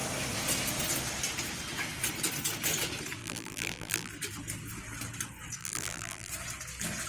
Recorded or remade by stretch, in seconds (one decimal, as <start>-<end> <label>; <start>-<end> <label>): 0.0-3.2 recorded; 3.2-4.1 remade; 4.1-5.6 recorded; 5.6-6.3 remade; 6.3-7.1 recorded